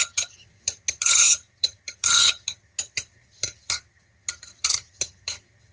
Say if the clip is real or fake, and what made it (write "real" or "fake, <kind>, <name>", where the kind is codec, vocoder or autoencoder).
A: fake, vocoder, HiFi-GAN